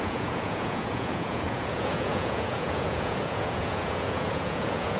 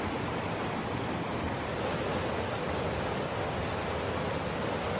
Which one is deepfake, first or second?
first